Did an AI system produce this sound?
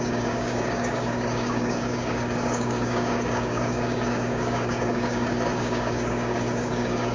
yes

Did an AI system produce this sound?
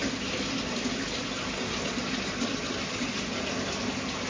no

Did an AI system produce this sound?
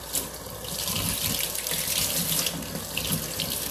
no